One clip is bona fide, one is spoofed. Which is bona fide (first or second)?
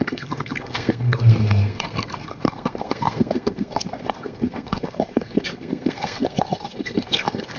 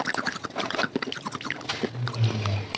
second